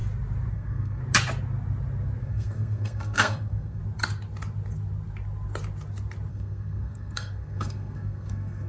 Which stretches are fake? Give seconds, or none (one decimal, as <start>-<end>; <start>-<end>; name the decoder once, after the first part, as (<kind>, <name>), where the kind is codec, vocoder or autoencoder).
0.5-1.0 (codec, SNAC); 2.2-3.8; 6.3-8.7